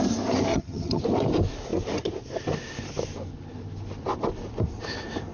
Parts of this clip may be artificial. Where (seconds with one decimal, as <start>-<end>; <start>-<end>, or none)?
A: 0.5-1.0